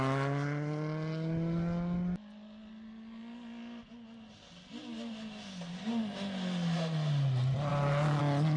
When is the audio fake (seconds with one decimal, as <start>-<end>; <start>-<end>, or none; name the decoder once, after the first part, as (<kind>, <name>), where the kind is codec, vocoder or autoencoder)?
7.7-8.2 (vocoder, BigVGAN v2)